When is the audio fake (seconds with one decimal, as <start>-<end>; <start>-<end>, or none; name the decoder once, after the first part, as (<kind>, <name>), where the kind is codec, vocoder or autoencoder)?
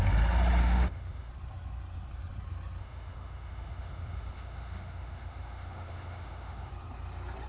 0.6-1.3 (autoencoder, DAC-VAE); 2.8-6.7